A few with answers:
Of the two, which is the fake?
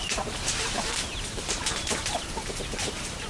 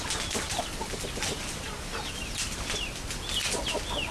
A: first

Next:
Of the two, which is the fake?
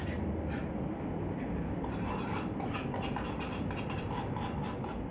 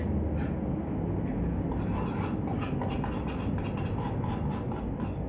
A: first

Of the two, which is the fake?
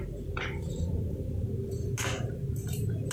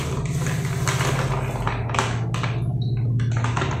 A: first